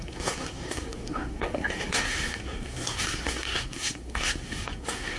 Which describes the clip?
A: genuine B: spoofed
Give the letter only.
B